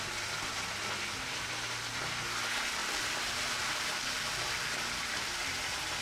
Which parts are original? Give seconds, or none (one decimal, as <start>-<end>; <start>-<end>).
0.0-2.8; 5.5-6.0